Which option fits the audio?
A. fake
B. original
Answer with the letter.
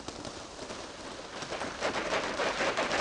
B